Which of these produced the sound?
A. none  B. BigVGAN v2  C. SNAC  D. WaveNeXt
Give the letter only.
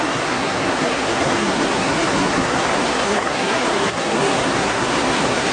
C